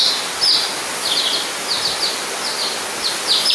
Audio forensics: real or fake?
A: real